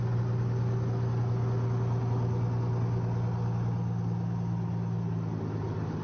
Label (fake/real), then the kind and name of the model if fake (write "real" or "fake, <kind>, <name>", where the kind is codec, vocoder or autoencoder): real